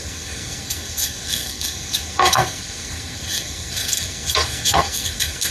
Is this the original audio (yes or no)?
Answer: no